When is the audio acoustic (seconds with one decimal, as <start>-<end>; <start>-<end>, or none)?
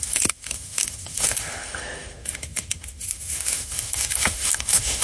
none